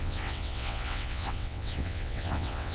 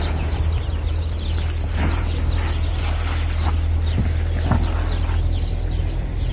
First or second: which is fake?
first